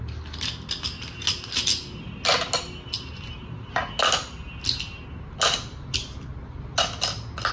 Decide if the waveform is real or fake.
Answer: real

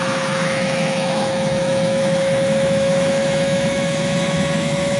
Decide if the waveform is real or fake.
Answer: fake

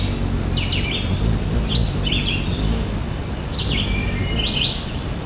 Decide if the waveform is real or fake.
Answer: real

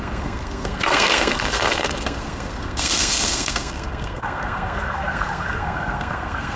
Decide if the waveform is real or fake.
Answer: fake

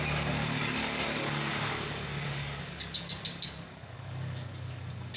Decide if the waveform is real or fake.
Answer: fake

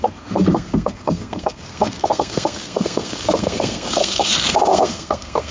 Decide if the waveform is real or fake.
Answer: fake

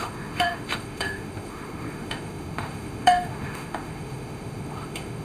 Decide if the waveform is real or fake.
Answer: fake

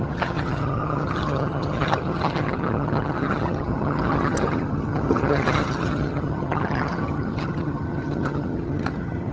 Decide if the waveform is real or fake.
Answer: fake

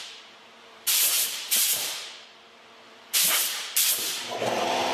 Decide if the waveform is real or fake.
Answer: fake